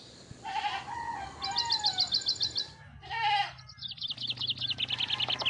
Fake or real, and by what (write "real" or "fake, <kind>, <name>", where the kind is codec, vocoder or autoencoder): real